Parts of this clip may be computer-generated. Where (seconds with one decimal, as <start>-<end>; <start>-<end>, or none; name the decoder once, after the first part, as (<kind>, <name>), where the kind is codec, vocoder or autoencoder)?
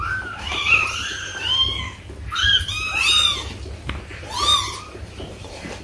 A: 0.0-1.3 (vocoder, BigVGAN v2); 4.8-5.8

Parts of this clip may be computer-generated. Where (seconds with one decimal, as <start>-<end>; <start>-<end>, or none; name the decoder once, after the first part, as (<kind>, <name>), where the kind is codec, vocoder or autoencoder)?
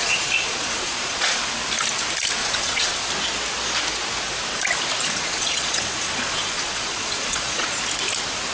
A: 0.0-1.4 (vocoder, Vocos); 2.4-3.1; 5.0-7.8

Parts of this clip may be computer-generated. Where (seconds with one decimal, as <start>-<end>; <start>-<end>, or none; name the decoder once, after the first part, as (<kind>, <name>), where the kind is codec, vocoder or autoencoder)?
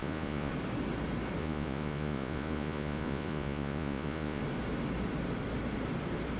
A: 0.0-0.5 (vocoder, Vocos); 1.4-4.4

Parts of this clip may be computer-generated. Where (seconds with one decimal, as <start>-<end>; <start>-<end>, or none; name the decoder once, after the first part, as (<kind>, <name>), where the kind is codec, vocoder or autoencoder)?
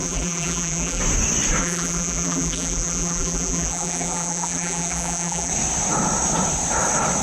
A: 0.0-1.0 (vocoder, BigVGAN v2); 1.6-5.5